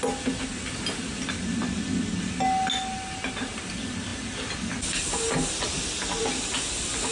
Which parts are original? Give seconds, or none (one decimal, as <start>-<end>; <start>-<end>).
0.0-7.1